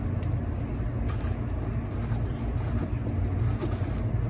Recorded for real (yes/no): yes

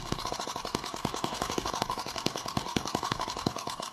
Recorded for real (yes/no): no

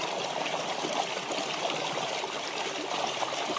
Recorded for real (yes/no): yes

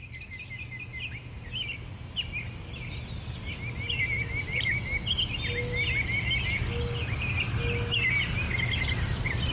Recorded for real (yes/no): yes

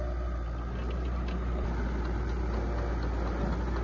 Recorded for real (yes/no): yes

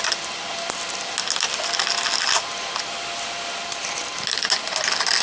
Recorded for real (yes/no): yes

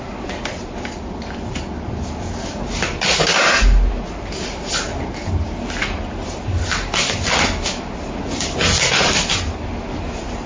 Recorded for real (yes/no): yes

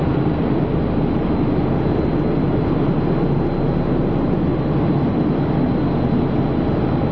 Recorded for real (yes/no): yes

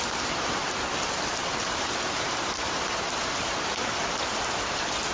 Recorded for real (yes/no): no